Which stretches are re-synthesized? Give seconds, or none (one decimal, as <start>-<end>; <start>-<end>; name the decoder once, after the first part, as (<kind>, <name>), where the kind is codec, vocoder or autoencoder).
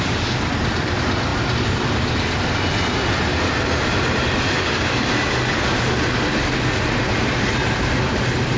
none